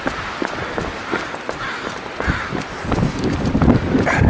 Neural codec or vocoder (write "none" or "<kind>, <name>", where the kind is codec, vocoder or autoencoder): none